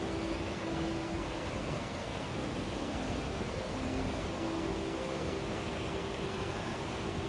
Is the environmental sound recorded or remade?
remade